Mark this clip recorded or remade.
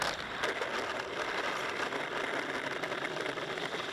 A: recorded